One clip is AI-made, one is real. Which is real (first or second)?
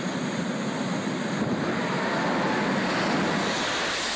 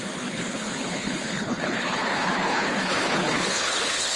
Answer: first